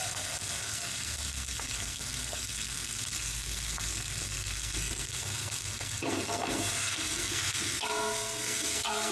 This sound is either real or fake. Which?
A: fake